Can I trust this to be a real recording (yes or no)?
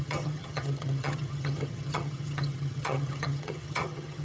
no